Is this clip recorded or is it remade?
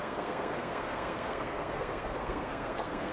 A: remade